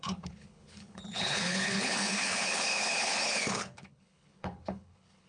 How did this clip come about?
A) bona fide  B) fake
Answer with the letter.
B